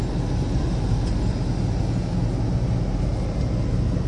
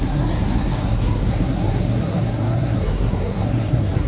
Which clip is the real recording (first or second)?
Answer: first